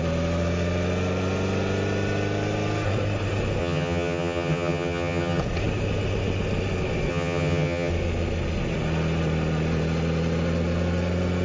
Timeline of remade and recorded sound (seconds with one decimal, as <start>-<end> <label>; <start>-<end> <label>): 0.0-3.6 recorded; 3.6-5.4 remade; 5.4-7.1 recorded; 7.1-7.9 remade; 7.9-11.4 recorded